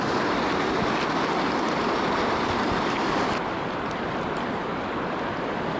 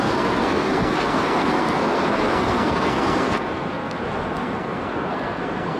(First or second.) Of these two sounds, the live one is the first